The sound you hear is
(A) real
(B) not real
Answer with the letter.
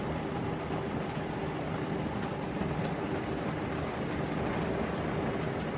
A